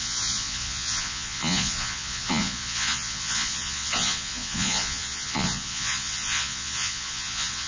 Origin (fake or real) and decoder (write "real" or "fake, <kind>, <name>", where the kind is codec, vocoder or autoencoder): fake, vocoder, Vocos